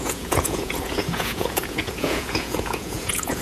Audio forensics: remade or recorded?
remade